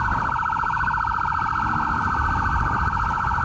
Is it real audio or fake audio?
real